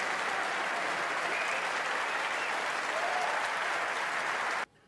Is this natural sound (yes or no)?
yes